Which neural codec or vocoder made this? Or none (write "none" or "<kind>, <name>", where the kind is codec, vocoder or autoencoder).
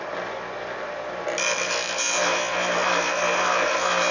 none